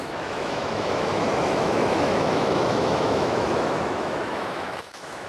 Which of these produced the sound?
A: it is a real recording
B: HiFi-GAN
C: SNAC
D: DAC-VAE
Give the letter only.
D